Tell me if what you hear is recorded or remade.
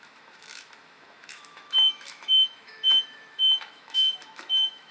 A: remade